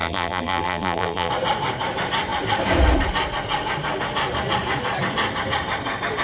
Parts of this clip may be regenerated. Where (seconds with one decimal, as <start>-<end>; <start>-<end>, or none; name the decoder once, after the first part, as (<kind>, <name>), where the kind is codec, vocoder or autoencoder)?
0.0-1.3 (vocoder, BigVGAN v2)